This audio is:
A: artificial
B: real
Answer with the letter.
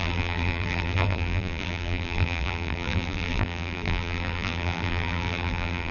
A